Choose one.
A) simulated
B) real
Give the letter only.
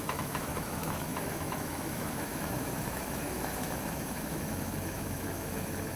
A